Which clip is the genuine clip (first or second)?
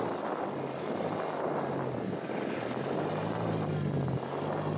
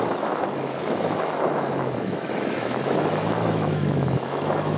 first